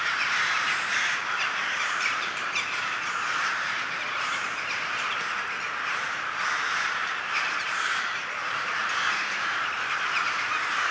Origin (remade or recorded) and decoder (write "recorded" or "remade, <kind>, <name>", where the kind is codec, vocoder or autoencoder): remade, vocoder, BigVGAN v2